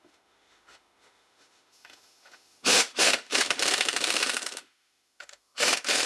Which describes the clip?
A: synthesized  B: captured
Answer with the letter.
A